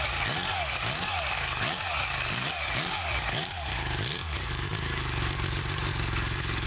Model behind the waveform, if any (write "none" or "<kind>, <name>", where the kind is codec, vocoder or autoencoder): codec, DAC